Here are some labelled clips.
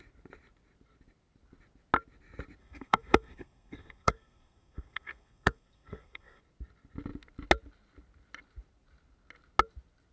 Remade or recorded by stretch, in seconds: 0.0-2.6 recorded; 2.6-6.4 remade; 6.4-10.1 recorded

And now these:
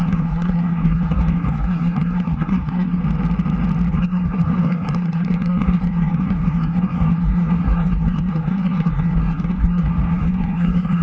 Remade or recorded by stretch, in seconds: 0.0-3.0 remade; 3.0-3.9 recorded; 3.9-11.0 remade

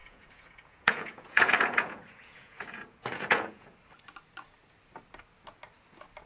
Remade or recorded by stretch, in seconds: 0.0-3.7 remade; 3.7-6.3 recorded

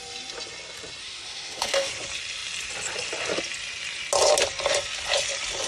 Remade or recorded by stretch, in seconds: 0.0-1.0 recorded; 1.0-1.9 remade; 1.9-5.7 recorded

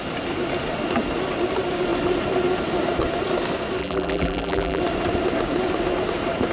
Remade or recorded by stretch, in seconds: 0.0-3.8 recorded; 3.8-4.8 remade; 4.8-6.5 recorded

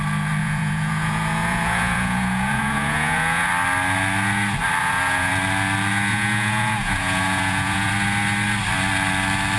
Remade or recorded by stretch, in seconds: 0.0-0.4 recorded; 0.4-3.5 remade; 3.5-4.8 recorded; 4.8-5.3 remade; 5.3-6.1 recorded; 6.1-7.9 remade; 7.9-9.6 recorded

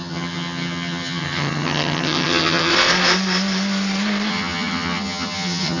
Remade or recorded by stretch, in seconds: 0.0-2.7 remade; 2.7-4.3 recorded; 4.3-5.8 remade